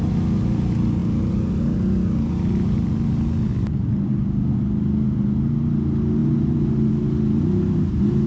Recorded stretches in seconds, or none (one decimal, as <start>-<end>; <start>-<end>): 0.0-8.3